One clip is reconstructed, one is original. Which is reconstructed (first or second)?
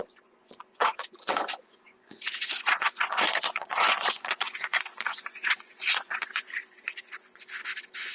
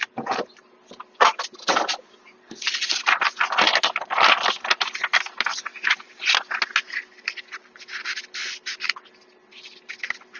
first